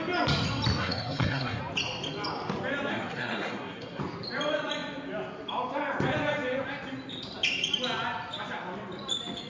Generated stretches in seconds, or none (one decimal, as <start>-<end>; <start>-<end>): 0.8-1.6; 2.9-4.0